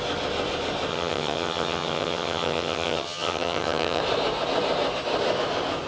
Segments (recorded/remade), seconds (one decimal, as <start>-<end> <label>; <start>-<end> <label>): 0.0-0.9 recorded; 0.9-4.0 remade; 4.0-5.9 recorded